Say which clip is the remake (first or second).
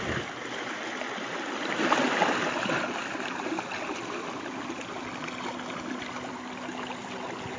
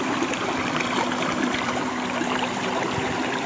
second